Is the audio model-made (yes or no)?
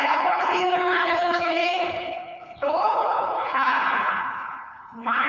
yes